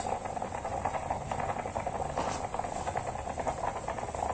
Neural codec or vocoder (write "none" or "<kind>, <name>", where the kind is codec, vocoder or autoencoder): none